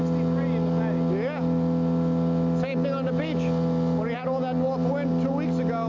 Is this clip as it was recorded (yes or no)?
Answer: yes